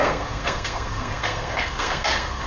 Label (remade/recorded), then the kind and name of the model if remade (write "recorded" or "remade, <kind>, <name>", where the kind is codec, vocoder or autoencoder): remade, codec, SNAC